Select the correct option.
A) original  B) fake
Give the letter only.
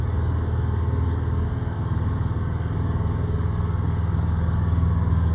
B